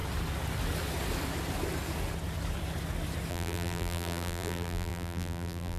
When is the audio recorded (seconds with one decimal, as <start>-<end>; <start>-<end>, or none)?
0.0-3.3